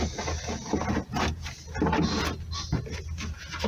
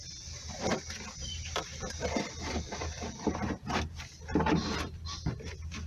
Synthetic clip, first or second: second